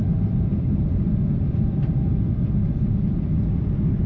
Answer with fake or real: fake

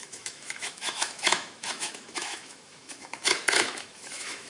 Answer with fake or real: fake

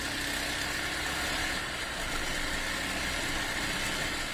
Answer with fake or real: real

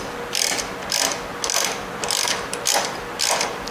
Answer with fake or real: real